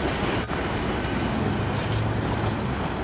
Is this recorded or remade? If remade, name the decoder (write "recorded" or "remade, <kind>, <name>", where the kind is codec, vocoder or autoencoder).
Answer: recorded